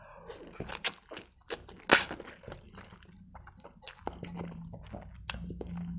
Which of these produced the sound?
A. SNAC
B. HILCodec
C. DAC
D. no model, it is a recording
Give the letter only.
D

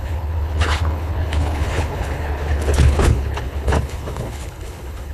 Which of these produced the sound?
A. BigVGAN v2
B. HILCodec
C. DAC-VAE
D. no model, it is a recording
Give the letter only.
B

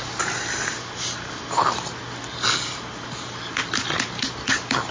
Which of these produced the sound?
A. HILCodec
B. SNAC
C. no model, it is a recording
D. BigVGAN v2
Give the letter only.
C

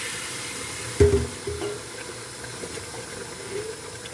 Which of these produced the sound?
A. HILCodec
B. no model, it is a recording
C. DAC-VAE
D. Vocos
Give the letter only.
B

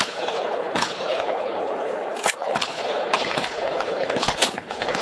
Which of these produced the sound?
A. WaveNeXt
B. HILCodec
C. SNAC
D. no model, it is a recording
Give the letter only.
B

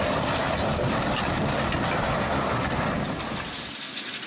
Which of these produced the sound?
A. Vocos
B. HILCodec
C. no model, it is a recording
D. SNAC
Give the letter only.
C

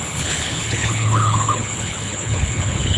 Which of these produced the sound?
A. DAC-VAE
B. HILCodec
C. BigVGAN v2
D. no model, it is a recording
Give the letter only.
B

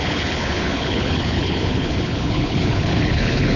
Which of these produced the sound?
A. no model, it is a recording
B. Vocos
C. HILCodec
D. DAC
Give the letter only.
C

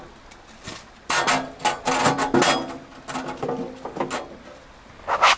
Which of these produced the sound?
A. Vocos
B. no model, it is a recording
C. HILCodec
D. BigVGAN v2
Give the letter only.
B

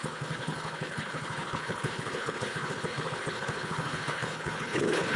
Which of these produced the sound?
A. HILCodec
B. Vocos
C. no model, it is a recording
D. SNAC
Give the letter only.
A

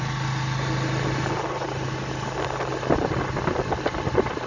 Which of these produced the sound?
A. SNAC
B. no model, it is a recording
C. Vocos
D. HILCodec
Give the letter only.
B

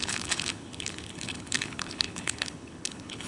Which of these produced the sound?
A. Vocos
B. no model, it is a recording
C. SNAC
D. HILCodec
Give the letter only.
D